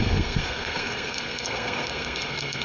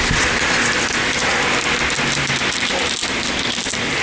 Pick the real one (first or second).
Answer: second